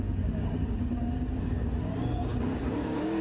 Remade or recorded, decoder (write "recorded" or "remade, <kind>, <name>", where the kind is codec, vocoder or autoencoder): remade, codec, DAC